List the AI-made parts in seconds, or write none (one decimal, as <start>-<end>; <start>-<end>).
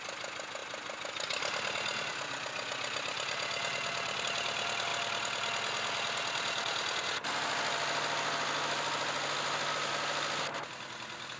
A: none